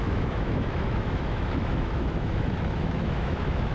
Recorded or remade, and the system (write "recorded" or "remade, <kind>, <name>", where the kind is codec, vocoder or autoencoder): remade, autoencoder, DAC-VAE